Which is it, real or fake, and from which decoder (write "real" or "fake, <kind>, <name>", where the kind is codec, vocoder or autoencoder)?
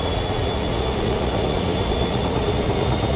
fake, vocoder, Vocos